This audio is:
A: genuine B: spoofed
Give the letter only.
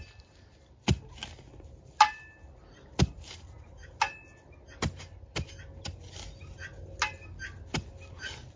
A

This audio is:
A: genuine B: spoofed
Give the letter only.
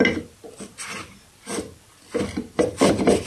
A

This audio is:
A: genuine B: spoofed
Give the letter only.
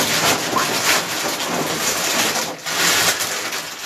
B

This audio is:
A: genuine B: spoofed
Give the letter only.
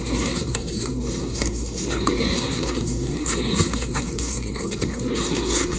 B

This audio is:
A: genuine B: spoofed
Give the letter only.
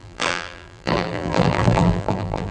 B